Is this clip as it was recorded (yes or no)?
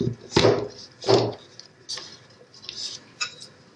yes